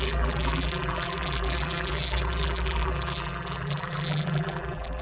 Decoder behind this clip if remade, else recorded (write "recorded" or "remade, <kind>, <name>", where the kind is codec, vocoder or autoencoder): remade, vocoder, BigVGAN v2